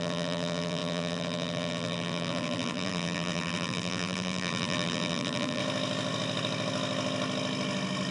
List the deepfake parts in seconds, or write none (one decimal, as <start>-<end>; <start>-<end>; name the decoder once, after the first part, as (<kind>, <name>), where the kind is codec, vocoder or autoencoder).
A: 0.0-5.6 (vocoder, BigVGAN v2)